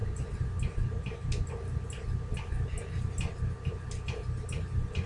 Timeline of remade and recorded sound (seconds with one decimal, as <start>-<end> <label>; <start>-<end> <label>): 0.0-5.1 recorded